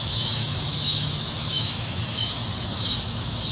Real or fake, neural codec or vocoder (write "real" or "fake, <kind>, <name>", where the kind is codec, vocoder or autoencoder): fake, autoencoder, DAC-VAE